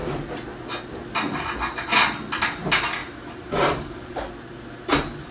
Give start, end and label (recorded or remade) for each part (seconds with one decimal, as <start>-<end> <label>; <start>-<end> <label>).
0.0-3.0 recorded; 3.0-4.3 remade; 4.3-5.3 recorded